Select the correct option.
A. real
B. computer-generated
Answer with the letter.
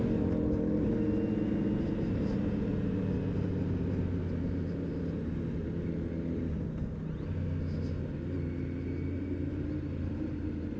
A